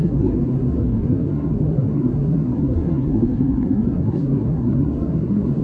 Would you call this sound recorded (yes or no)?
no